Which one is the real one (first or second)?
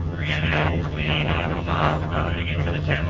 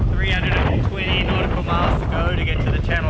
second